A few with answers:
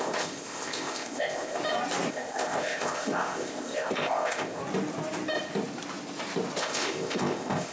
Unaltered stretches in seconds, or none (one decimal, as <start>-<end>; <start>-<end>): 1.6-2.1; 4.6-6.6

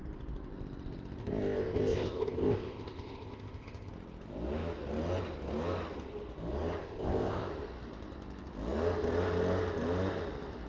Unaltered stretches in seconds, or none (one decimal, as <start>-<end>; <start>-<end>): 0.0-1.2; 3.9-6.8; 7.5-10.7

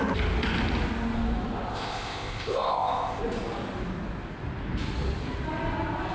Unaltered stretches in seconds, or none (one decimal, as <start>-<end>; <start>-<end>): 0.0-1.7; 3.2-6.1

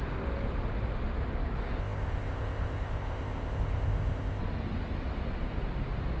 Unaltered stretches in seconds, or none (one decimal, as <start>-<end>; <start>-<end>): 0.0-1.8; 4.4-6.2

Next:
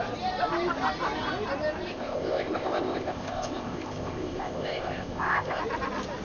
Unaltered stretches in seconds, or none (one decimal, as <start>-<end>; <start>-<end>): 0.0-1.9; 5.6-6.2